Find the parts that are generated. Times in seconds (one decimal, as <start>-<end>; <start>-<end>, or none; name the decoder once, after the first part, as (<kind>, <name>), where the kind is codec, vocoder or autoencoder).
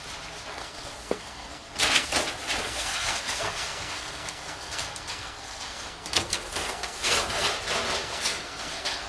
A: 0.5-2.1 (codec, SNAC); 2.6-7.5; 8.0-9.1